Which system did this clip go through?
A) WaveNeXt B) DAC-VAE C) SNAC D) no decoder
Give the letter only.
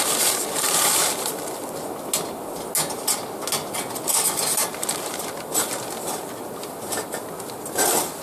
D